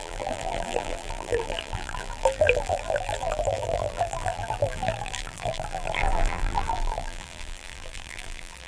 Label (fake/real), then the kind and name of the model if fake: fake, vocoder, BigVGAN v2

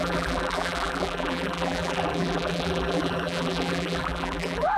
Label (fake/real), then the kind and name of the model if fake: fake, vocoder, BigVGAN v2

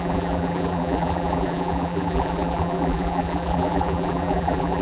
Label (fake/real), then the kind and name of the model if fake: fake, vocoder, BigVGAN v2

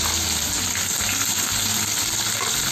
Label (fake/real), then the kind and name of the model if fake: real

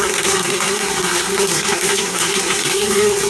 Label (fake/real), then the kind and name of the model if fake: fake, codec, SNAC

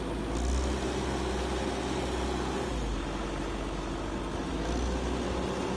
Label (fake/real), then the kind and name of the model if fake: real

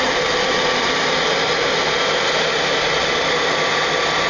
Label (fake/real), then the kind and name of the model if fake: real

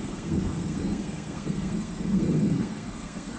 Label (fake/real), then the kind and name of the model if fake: fake, codec, SNAC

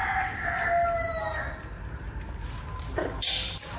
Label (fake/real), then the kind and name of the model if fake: real